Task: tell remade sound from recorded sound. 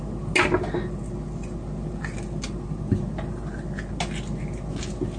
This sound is recorded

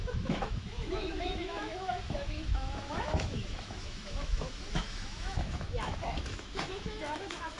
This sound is remade